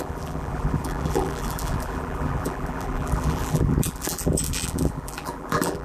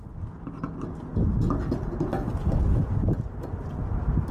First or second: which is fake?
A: first